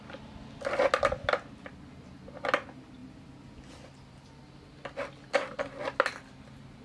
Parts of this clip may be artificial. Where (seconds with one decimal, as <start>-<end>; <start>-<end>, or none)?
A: none